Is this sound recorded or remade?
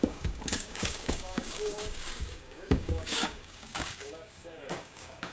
remade